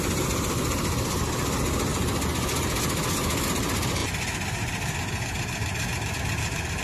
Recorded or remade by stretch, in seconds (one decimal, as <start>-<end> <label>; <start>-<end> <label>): 0.0-6.8 recorded